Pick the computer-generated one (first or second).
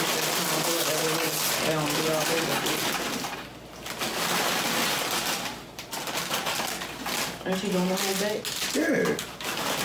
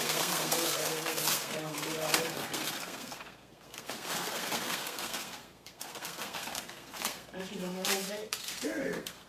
second